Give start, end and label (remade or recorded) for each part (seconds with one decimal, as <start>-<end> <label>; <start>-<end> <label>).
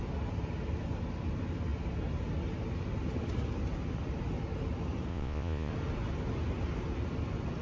0.0-5.1 recorded; 5.1-5.7 remade; 5.7-7.6 recorded